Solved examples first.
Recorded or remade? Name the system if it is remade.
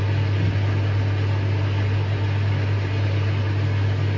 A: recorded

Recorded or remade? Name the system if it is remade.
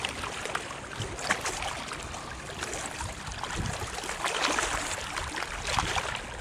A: recorded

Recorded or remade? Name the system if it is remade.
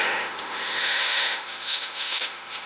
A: remade, autoencoder, DAC-VAE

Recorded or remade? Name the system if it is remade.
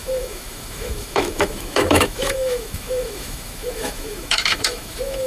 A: remade, autoencoder, DAC-VAE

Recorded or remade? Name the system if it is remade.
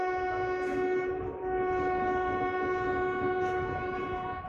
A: recorded